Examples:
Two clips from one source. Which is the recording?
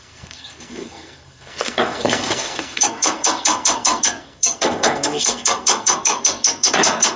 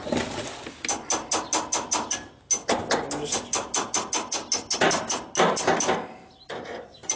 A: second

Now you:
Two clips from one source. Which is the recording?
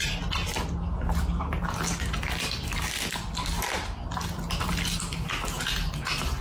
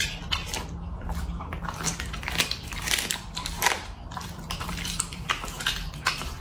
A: first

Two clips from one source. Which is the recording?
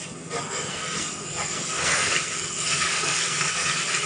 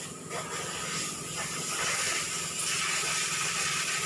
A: second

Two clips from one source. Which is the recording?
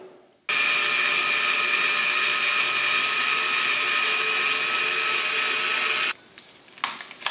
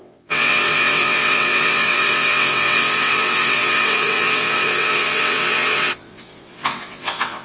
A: first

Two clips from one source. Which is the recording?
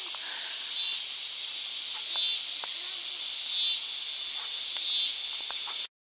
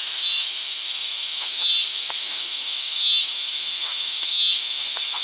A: first